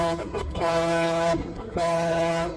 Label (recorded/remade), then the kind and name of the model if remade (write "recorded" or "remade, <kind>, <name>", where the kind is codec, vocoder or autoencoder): remade, codec, SNAC